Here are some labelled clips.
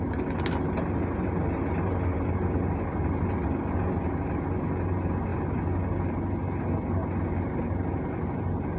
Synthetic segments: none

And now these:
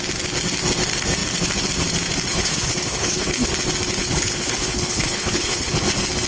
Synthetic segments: 2.3-3.5; 4.0-5.8

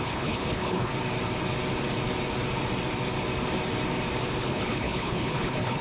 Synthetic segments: 0.0-0.9; 4.4-5.8

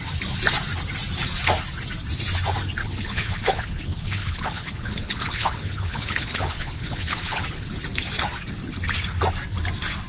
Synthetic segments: 2.8-7.4

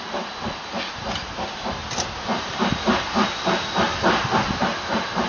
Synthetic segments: none